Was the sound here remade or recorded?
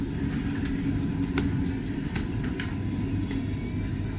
recorded